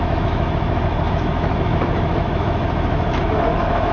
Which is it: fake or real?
fake